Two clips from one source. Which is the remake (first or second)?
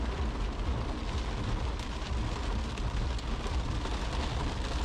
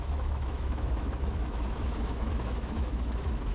second